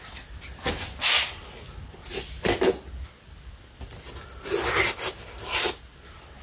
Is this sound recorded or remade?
recorded